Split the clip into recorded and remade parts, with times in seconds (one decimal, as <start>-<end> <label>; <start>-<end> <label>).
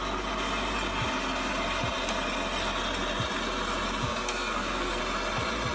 0.0-4.0 recorded; 4.0-5.0 remade; 5.0-5.7 recorded